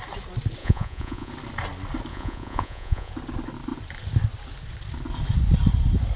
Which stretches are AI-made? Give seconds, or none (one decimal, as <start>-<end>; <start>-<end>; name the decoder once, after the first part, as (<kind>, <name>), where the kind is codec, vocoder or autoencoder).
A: 0.6-1.3 (vocoder, Vocos); 2.1-3.1